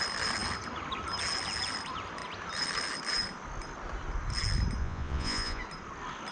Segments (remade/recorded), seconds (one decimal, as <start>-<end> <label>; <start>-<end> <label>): 0.0-4.8 recorded; 4.8-5.6 remade; 5.6-6.3 recorded